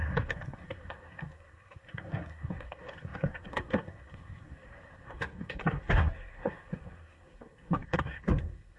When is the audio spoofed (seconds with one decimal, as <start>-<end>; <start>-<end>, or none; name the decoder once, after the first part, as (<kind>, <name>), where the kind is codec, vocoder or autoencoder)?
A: 0.0-8.8 (codec, SNAC)